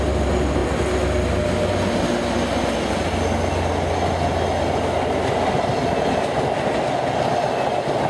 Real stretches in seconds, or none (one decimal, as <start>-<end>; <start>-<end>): 0.0-8.1